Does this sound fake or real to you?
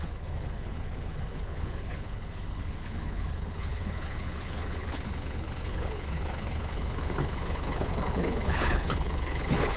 fake